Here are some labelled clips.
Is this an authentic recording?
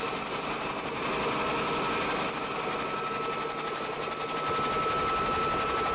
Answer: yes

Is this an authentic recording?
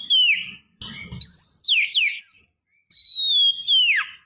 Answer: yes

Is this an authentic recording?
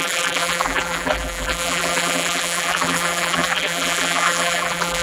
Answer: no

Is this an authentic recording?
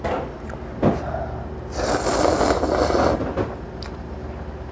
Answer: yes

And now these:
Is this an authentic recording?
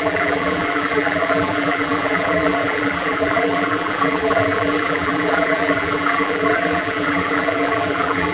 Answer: no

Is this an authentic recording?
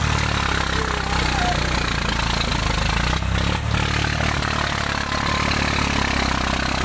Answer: yes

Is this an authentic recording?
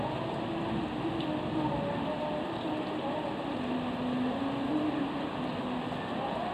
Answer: yes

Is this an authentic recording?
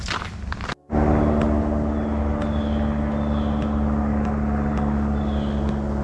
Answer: yes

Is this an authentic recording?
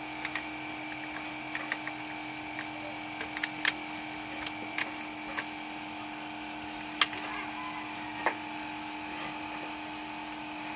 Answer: yes